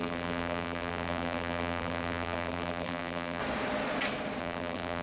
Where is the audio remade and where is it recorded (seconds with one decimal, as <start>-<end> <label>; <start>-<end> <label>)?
0.0-3.4 remade; 3.4-4.4 recorded; 4.4-5.0 remade